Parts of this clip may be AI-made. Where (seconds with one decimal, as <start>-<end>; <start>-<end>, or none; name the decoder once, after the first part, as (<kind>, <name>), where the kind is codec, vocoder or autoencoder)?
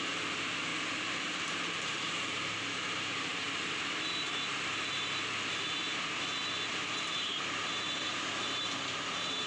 0.0-0.7 (vocoder, BigVGAN v2); 1.4-3.3; 6.7-9.5